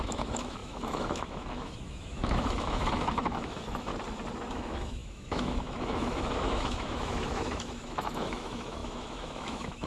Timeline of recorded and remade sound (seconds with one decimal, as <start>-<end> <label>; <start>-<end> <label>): 0.0-3.9 remade; 3.9-4.5 recorded; 4.5-9.9 remade